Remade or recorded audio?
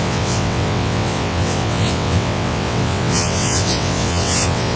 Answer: remade